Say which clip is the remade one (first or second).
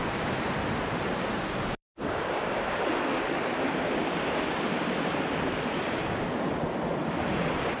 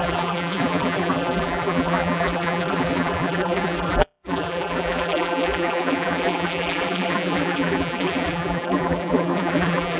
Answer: second